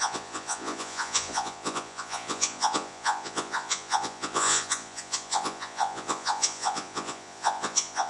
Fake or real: fake